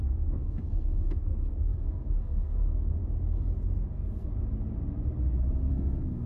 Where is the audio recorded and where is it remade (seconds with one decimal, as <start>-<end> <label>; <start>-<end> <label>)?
0.0-3.0 remade; 3.0-3.9 recorded; 3.9-4.3 remade; 4.3-5.7 recorded; 5.7-6.3 remade